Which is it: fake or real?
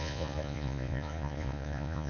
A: fake